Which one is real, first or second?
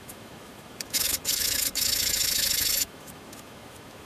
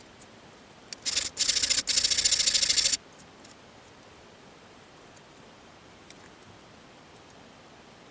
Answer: second